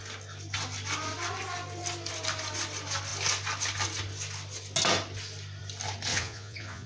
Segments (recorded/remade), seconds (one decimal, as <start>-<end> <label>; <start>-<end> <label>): 0.0-6.1 recorded; 6.1-6.9 remade